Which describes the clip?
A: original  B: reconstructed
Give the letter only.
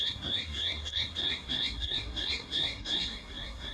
B